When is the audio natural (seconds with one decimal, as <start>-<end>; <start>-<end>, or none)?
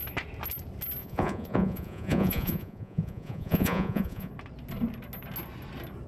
0.0-1.0; 4.3-6.1